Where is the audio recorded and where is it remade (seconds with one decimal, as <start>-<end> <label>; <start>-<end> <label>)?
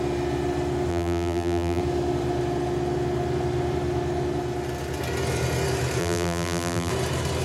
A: 0.0-0.9 recorded; 0.9-1.8 remade; 1.8-6.0 recorded; 6.0-6.9 remade; 6.9-7.4 recorded